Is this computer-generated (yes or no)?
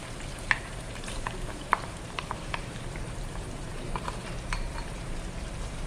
yes